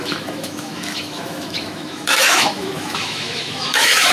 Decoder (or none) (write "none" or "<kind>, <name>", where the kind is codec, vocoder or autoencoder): autoencoder, DAC-VAE